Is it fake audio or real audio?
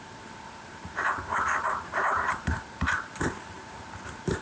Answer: fake